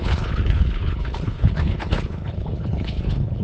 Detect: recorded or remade remade